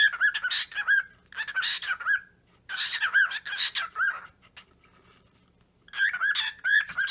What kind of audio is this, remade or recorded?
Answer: recorded